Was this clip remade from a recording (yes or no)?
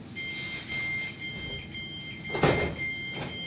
no